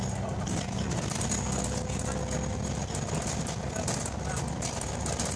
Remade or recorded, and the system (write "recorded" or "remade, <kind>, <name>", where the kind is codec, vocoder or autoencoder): recorded